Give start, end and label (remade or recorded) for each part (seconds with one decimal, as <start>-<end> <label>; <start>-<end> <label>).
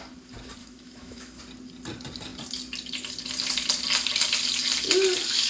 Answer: 0.0-0.6 recorded; 0.6-1.4 remade; 1.4-5.5 recorded